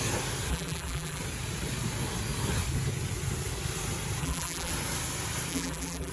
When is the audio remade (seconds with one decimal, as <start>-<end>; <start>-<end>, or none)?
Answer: 0.5-1.2; 4.2-4.7; 5.5-6.1